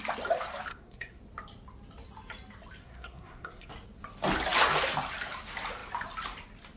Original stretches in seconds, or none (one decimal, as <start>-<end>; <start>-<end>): 0.0-0.7; 1.2-2.8; 3.7-6.8